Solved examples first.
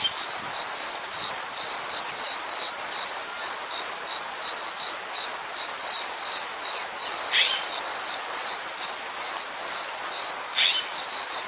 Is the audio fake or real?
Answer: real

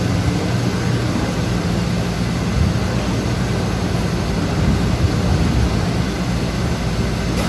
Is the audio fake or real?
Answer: real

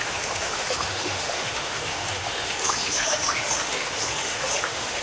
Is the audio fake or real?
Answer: fake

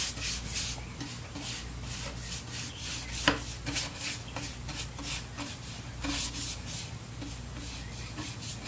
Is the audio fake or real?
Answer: real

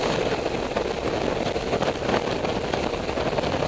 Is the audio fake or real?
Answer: real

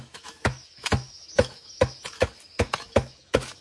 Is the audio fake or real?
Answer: fake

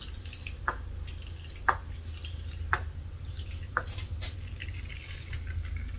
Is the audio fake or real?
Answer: real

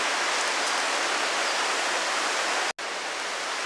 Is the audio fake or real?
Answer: real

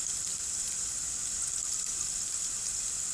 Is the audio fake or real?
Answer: real